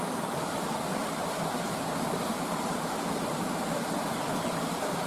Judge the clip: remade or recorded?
remade